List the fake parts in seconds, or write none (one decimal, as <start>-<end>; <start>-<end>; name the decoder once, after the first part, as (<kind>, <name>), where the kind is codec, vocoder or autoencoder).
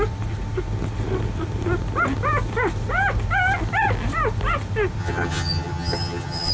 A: 5.0-6.5 (vocoder, HiFi-GAN)